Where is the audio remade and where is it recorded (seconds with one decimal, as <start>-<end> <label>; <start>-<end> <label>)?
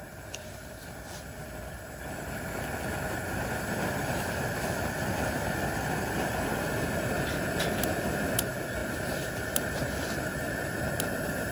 0.0-11.5 recorded